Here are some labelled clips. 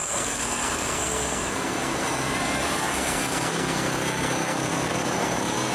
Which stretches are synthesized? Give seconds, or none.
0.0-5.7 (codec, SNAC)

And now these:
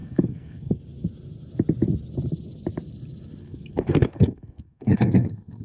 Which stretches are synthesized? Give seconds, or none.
0.0-0.8 (codec, SNAC); 3.4-5.6

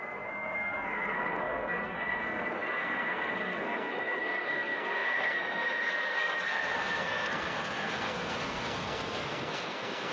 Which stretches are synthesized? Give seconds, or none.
0.0-10.1 (codec, SNAC)